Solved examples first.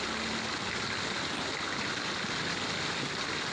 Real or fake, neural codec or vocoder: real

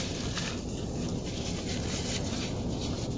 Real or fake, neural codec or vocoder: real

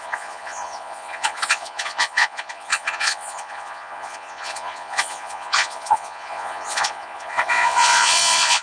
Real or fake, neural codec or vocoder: fake, vocoder, Vocos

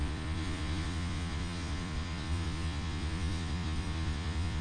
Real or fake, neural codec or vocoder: fake, vocoder, Vocos